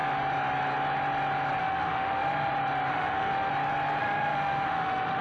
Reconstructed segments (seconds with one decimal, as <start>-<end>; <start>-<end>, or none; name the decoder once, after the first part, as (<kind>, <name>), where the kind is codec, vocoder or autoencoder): 1.6-2.5 (autoencoder, DAC-VAE); 2.9-3.5; 4.0-5.2